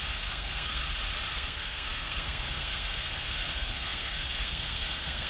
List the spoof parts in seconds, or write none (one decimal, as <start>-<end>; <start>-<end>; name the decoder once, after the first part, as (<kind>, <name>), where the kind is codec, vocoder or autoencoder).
0.0-0.8 (codec, SNAC); 1.3-5.3